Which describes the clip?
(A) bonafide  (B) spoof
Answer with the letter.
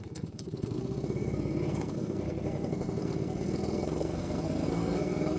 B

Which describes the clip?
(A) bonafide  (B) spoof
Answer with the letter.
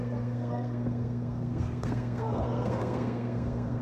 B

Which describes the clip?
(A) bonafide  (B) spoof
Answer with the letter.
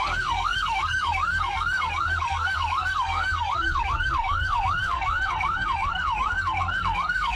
B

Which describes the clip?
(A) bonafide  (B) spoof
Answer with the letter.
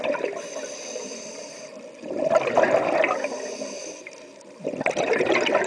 A